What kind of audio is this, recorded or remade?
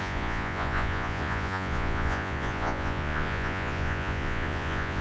remade